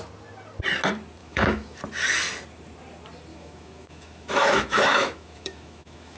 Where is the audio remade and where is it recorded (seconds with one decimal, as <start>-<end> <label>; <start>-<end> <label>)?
0.0-1.2 recorded; 1.2-1.8 remade; 1.8-3.3 recorded; 3.3-6.2 remade